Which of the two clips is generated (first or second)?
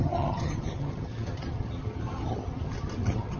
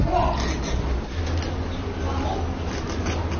first